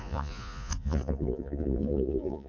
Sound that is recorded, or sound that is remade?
remade